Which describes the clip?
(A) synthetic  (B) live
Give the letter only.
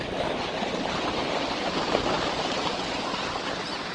B